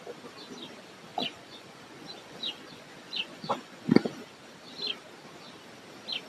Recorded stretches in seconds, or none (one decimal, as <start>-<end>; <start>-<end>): 0.0-1.1; 4.2-6.3